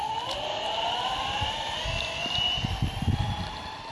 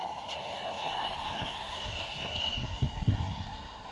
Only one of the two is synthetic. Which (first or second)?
second